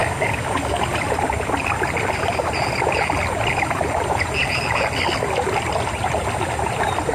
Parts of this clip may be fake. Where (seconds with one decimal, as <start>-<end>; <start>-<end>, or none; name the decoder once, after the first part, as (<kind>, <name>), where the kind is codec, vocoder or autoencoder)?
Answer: 0.0-0.8 (codec, DAC)